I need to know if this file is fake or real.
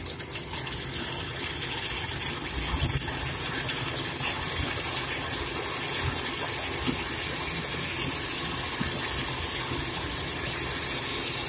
real